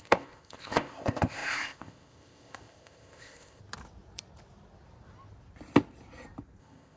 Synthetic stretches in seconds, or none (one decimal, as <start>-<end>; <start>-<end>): 0.0-3.6; 6.6-7.0